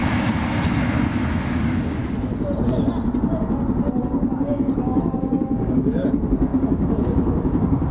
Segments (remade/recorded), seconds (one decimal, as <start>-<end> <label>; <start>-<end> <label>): 0.0-1.3 recorded; 1.3-2.0 remade; 2.0-4.0 recorded; 4.0-7.9 remade